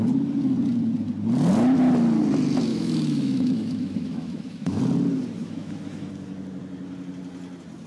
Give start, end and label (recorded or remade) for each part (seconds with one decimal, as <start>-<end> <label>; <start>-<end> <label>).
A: 0.0-2.7 recorded; 2.7-4.8 remade; 4.8-5.4 recorded; 5.4-6.3 remade; 6.3-7.9 recorded